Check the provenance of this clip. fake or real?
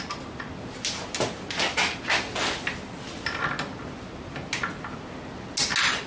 real